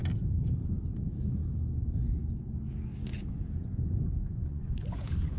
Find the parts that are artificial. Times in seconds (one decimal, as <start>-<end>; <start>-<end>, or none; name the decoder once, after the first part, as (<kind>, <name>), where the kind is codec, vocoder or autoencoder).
4.3-5.4 (vocoder, Vocos)